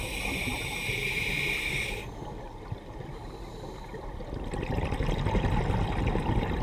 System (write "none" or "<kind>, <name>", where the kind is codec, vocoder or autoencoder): none